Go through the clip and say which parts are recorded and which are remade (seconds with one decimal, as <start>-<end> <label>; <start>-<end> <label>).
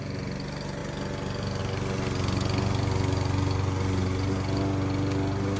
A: 0.0-5.6 recorded